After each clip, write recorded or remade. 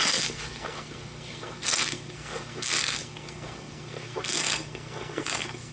remade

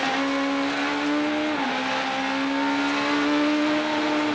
recorded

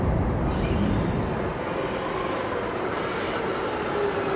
recorded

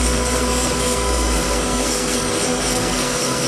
remade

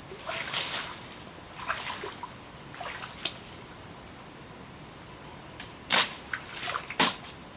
recorded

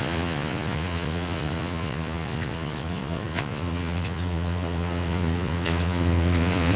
remade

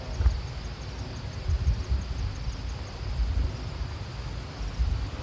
recorded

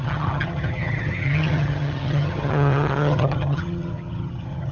remade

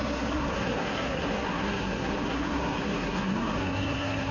remade